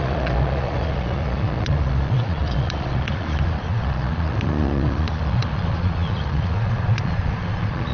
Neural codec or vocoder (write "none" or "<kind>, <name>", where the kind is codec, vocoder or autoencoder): vocoder, Vocos